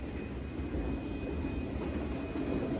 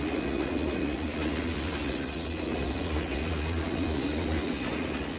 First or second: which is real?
first